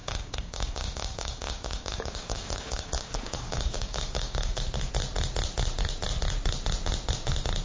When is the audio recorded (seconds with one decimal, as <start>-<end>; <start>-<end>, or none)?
4.6-7.6